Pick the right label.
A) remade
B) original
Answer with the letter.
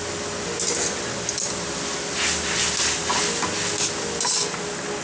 B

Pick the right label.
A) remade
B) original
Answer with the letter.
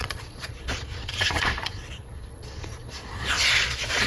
A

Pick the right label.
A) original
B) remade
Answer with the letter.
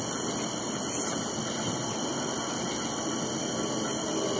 A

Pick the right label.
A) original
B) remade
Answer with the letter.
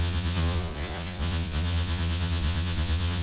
B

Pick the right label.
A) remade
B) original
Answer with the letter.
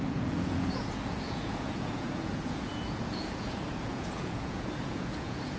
A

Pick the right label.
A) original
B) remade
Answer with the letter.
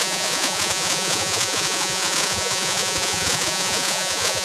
B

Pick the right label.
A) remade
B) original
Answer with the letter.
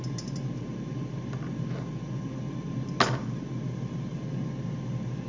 B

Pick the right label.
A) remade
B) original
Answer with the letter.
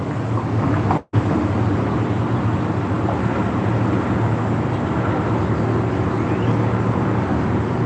B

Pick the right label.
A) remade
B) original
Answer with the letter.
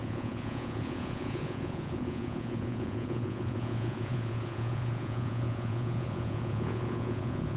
A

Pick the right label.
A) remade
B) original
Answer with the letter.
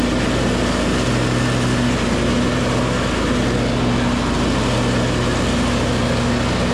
B